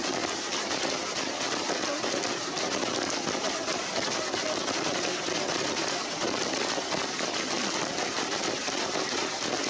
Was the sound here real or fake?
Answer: real